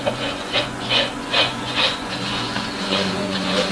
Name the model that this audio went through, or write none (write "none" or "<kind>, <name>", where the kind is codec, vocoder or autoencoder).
vocoder, Vocos